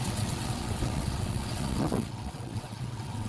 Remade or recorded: remade